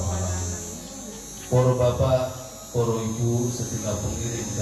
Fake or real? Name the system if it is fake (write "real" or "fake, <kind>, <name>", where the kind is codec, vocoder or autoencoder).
real